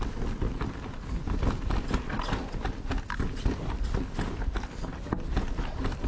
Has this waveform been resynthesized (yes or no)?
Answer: no